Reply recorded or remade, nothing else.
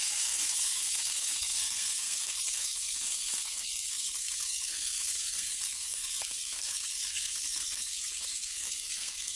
remade